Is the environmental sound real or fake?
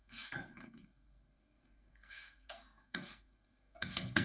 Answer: fake